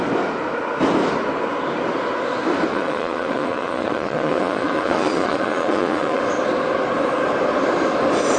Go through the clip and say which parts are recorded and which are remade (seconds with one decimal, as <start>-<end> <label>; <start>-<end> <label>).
0.0-2.7 recorded; 2.7-6.2 remade; 6.2-8.4 recorded

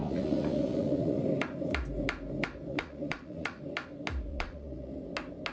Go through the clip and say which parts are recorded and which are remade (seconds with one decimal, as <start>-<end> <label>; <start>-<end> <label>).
0.0-1.2 remade; 1.2-2.7 recorded; 2.7-3.6 remade; 3.6-4.3 recorded; 4.3-5.0 remade; 5.0-5.5 recorded

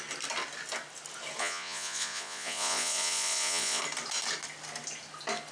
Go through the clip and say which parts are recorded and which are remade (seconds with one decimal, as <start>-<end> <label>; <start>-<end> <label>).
0.0-1.4 recorded; 1.4-3.8 remade; 3.8-5.5 recorded

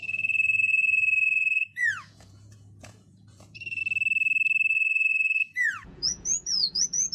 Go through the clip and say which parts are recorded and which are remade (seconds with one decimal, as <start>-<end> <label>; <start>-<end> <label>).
0.0-3.8 remade; 3.8-4.7 recorded; 4.7-7.1 remade

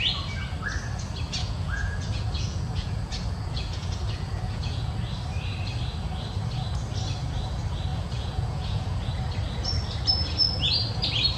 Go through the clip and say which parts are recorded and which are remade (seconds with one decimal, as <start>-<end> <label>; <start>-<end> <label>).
0.0-1.4 recorded; 1.4-4.9 remade; 4.9-7.9 recorded; 7.9-9.1 remade; 9.1-11.4 recorded

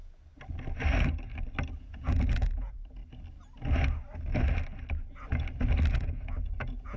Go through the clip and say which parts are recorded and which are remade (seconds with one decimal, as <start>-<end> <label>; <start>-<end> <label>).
0.0-1.8 recorded; 1.8-3.0 remade; 3.0-5.9 recorded; 5.9-7.0 remade

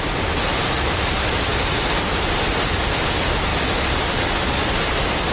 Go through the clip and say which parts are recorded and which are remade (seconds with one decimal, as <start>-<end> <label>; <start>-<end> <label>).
0.0-5.3 recorded